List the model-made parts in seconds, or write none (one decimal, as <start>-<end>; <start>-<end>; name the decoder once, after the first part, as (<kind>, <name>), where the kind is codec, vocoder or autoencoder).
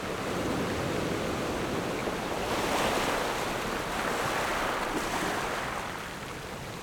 2.0-3.2 (vocoder, BigVGAN v2); 4.5-5.5